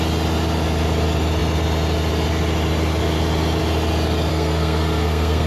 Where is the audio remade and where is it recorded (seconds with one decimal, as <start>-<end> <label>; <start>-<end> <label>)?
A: 0.0-4.3 recorded; 4.3-5.5 remade